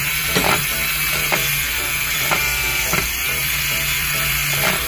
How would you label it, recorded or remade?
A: remade